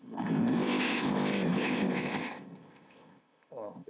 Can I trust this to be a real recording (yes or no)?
no